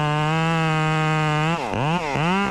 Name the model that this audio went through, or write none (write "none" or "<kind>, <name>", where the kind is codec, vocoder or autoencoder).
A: none